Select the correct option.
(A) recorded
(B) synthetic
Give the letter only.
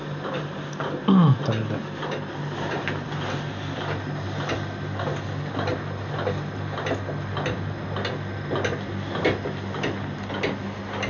A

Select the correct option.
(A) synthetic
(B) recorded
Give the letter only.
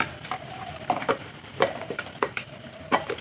A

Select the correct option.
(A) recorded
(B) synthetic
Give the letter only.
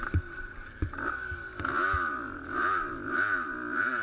A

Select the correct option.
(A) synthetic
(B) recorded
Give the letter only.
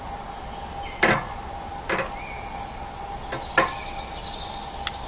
B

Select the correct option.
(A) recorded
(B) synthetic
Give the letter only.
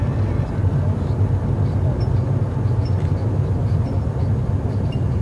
A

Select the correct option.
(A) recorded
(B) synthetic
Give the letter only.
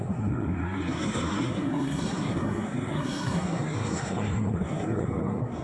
B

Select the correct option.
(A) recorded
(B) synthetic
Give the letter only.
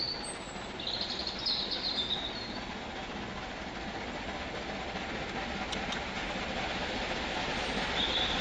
A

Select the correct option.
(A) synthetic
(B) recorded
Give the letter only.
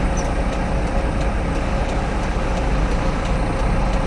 B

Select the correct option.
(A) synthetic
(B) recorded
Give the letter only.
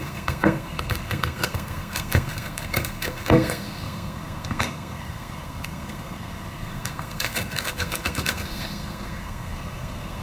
A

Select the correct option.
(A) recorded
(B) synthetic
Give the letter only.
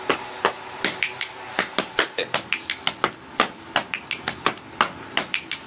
A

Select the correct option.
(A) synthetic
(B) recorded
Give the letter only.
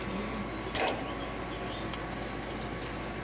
B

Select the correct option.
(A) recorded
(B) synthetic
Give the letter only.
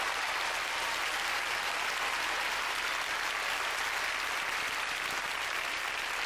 A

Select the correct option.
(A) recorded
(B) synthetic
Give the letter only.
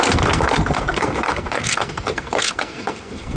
B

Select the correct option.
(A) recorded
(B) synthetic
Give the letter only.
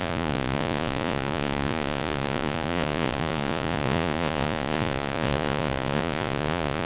B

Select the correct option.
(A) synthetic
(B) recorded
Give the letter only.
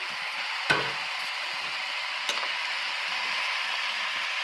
A